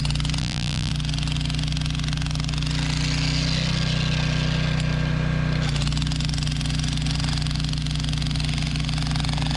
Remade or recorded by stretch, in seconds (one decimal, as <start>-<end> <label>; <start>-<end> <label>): 0.0-0.4 recorded; 0.4-0.9 remade; 0.9-9.6 recorded